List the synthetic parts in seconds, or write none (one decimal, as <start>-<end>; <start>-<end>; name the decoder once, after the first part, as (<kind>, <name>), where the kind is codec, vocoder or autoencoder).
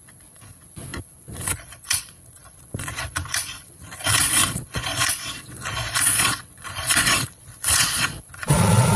0.0-9.0 (vocoder, Vocos)